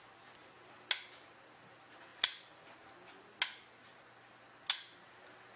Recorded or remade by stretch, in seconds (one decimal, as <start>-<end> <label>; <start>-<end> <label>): 0.0-5.6 recorded